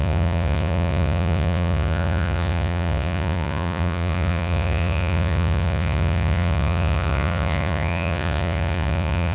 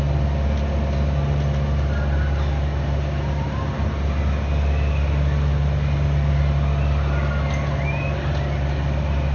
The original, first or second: second